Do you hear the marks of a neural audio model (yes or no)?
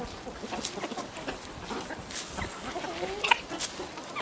no